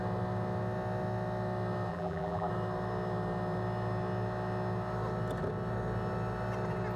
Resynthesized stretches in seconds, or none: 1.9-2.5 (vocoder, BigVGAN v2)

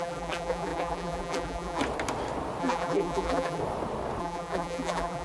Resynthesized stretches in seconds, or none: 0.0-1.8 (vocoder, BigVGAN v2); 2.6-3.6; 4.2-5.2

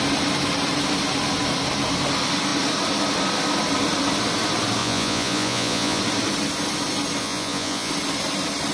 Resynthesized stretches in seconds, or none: 4.8-6.0 (vocoder, Vocos); 7.2-7.9